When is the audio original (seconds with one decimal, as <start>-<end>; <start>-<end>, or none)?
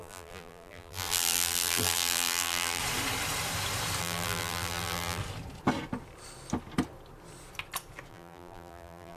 2.8-4.0; 5.2-8.1